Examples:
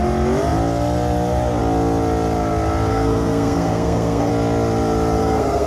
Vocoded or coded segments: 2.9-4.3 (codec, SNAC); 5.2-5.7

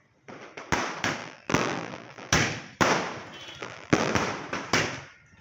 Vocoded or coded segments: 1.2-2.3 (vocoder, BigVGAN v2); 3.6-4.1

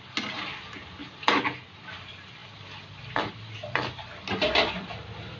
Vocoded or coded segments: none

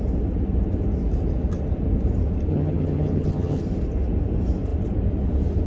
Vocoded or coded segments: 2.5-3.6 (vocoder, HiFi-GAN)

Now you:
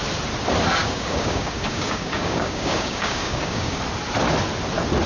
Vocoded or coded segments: 0.8-3.8 (codec, DAC)